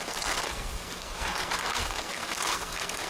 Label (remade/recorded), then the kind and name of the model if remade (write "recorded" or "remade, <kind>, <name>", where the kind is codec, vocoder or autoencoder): remade, codec, SNAC